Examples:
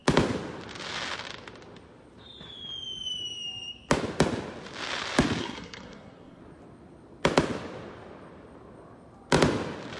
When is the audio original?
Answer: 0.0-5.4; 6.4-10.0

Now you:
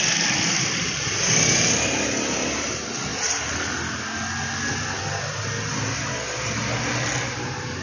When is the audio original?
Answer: 0.0-7.8